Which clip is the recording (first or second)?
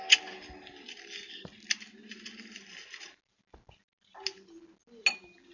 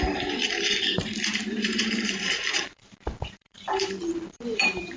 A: first